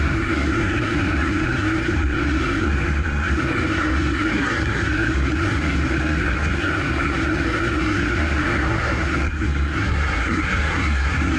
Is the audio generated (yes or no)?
yes